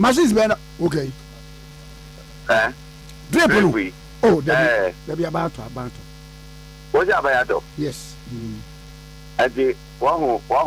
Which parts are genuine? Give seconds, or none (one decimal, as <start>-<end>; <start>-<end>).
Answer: 0.0-1.7; 4.5-7.5; 8.9-10.7